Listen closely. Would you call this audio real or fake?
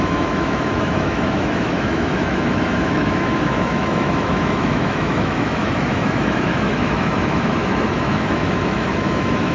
fake